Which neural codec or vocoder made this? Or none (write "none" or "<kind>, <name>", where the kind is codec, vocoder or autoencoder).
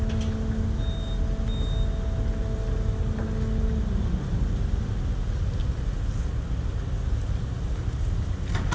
none